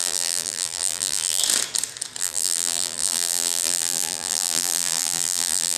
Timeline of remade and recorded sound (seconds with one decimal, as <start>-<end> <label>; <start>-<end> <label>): 0.0-1.4 remade; 1.4-2.2 recorded; 2.2-5.8 remade